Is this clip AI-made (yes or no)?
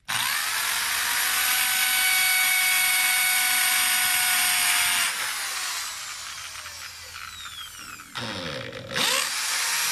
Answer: no